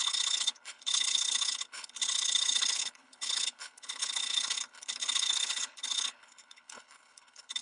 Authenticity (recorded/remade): remade